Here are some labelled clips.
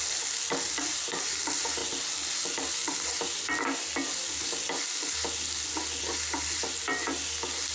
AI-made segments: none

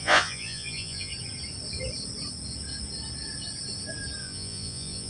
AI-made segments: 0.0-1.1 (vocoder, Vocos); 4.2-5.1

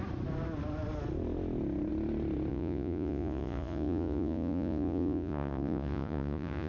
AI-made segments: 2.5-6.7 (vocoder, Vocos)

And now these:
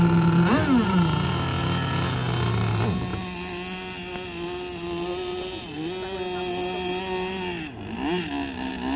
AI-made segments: none

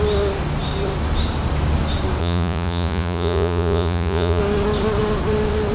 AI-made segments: 2.2-4.4 (vocoder, Vocos)

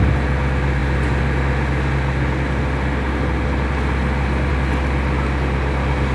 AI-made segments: none